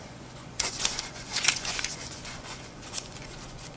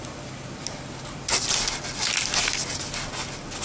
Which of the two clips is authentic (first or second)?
second